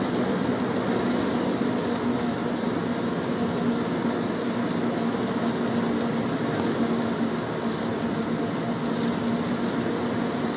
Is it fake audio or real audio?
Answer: real